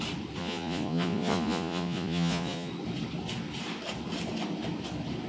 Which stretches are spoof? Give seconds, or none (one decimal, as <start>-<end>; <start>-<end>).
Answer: 0.4-2.7